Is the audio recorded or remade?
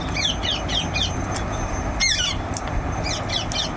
recorded